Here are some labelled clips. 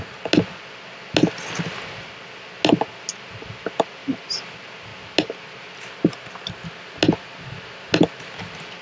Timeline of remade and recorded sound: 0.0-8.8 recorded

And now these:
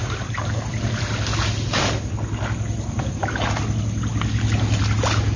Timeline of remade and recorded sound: 0.0-5.4 recorded